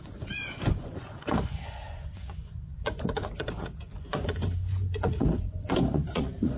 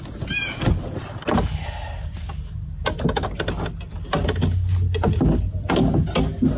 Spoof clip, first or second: first